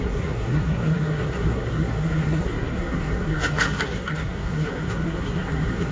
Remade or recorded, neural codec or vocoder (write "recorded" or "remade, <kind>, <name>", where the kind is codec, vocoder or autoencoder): remade, codec, SNAC